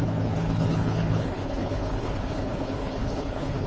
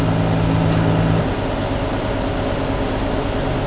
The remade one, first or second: first